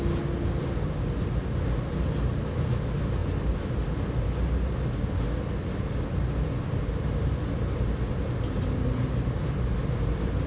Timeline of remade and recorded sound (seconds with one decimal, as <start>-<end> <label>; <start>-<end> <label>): 0.0-10.5 recorded